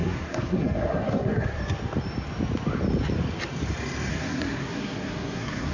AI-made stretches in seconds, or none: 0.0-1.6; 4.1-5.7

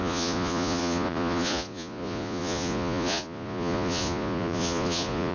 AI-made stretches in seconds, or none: 0.0-5.3

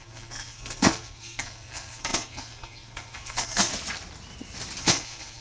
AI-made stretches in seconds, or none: 0.0-3.7; 4.8-5.4

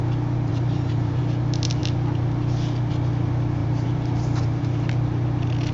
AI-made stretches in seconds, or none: 0.5-1.2; 3.6-4.9

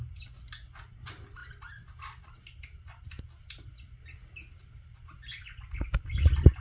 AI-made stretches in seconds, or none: none

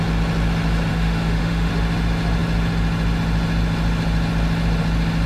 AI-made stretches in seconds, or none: 0.9-1.7

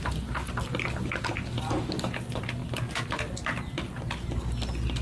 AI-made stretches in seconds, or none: none